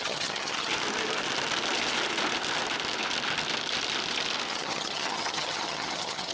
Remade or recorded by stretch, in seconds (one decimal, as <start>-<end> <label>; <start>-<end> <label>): 0.0-0.7 remade; 0.7-4.5 recorded; 4.5-6.3 remade